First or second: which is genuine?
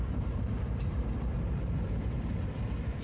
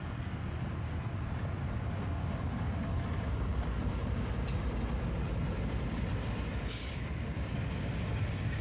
second